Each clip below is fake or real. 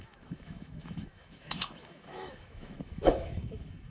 fake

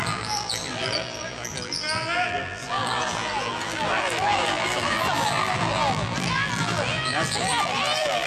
fake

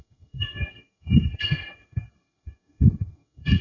fake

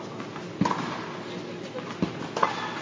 real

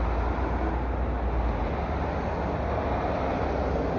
real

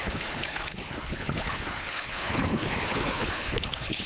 fake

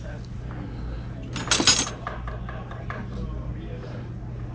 real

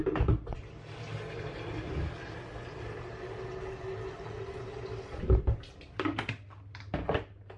real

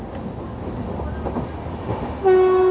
real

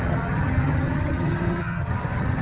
fake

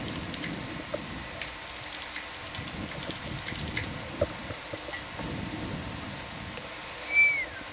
real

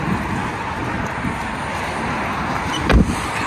real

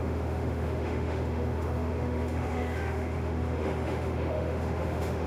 fake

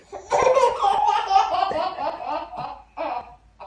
real